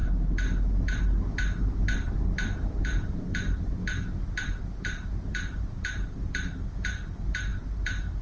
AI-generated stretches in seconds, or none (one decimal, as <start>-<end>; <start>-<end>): 2.8-3.8; 4.6-8.2